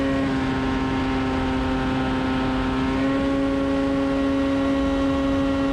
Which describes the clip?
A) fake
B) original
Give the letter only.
B